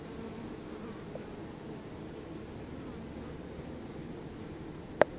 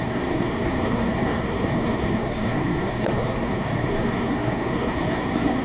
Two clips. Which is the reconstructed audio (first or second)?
second